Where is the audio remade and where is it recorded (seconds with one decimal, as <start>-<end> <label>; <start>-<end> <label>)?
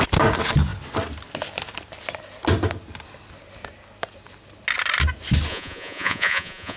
0.0-5.5 recorded; 5.5-6.8 remade